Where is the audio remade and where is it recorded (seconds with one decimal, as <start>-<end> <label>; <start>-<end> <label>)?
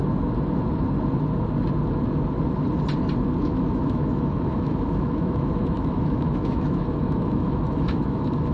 0.0-3.4 recorded; 3.4-8.5 remade